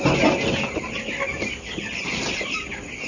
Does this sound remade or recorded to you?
recorded